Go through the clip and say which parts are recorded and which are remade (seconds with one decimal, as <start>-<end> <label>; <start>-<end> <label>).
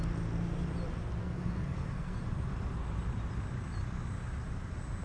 0.0-1.2 recorded; 1.2-2.2 remade; 2.2-5.0 recorded